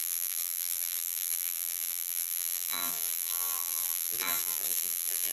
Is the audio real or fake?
fake